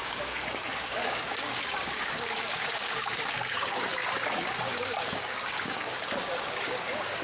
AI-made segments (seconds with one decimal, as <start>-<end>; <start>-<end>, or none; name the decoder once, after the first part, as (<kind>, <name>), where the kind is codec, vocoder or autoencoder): 0.0-7.2 (codec, DAC)